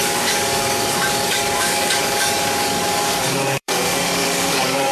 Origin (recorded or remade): remade